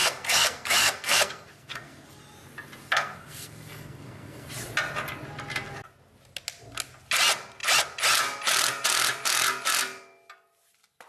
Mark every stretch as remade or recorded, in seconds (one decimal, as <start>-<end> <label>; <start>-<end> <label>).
0.0-2.2 remade; 2.2-2.8 recorded; 2.8-4.5 remade; 4.5-11.1 recorded